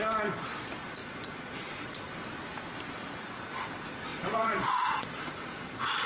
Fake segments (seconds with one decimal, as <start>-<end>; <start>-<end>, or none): 1.0-2.1; 4.1-6.1